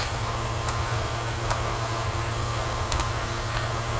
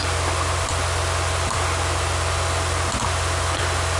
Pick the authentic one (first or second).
second